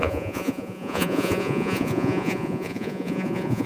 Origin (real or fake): fake